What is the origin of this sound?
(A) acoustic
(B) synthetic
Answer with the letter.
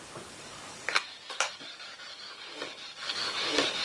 B